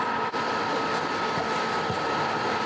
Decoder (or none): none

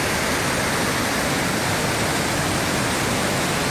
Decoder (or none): none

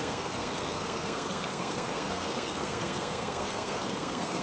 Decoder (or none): codec, SNAC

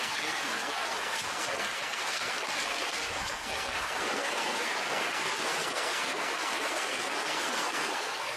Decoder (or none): codec, SNAC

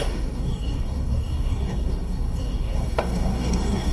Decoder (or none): codec, SNAC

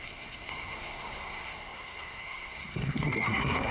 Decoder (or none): codec, SNAC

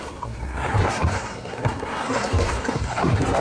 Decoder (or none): codec, SNAC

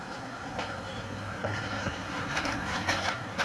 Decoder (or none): codec, SNAC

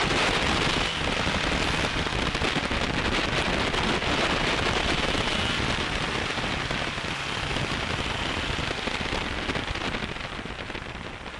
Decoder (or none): none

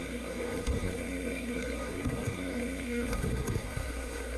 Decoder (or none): codec, SNAC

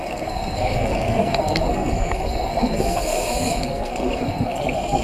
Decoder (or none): codec, SNAC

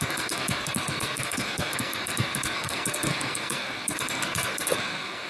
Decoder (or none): codec, SNAC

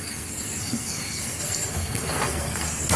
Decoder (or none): codec, SNAC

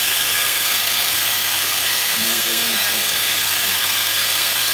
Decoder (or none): codec, SNAC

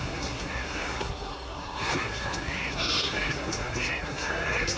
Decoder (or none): codec, SNAC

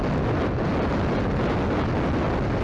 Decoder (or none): none